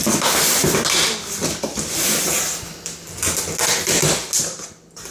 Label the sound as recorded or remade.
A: recorded